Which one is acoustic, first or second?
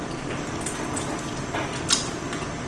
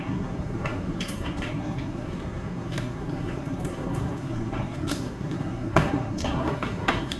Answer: first